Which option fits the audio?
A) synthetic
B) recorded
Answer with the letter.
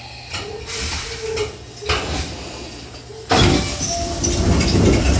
B